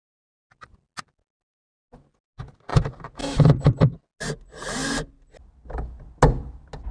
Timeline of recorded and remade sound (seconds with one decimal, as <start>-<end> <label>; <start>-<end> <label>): 0.0-6.9 recorded